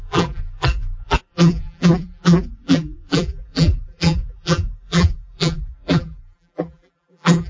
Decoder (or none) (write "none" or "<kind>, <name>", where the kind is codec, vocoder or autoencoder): vocoder, BigVGAN v2